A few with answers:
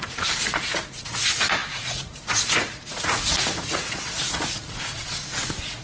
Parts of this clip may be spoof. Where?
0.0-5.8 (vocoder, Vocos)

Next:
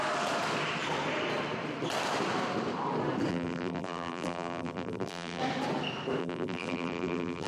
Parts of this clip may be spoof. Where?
3.3-5.4 (vocoder, BigVGAN v2); 6.2-7.5